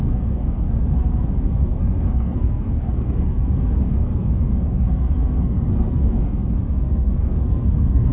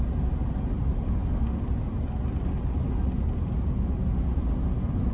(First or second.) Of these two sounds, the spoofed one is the first